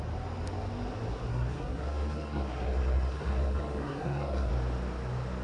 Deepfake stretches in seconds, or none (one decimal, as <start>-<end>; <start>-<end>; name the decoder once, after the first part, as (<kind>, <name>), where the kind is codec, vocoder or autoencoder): 1.3-4.5 (codec, SNAC)